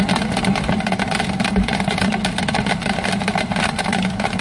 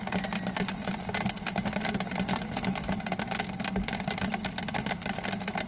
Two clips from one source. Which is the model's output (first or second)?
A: first